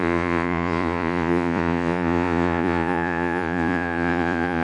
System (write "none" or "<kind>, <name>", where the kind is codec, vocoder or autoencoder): vocoder, Vocos